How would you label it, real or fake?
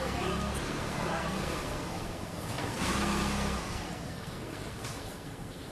fake